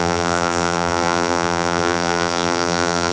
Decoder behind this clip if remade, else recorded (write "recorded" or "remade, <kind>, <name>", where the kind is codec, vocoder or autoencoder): remade, vocoder, BigVGAN v2